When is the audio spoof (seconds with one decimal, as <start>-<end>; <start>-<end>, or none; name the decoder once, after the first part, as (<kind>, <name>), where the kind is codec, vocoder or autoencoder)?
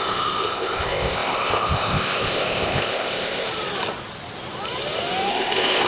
0.0-3.5 (codec, ZipCodec); 5.3-5.9